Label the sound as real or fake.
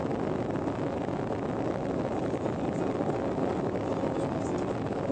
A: real